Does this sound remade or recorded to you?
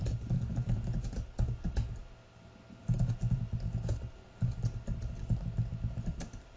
recorded